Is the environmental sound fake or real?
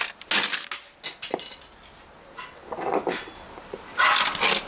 real